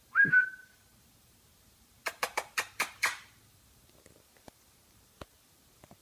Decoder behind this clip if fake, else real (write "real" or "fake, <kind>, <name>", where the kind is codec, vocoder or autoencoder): fake, vocoder, BigVGAN v2